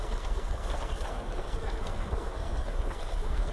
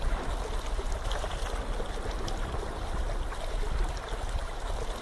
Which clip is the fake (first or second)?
first